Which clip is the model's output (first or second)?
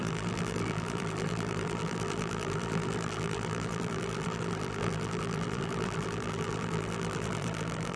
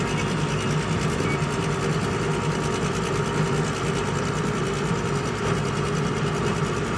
first